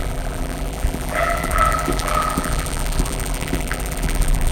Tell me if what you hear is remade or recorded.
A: remade